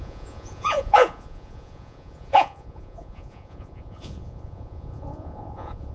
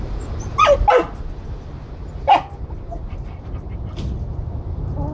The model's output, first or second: first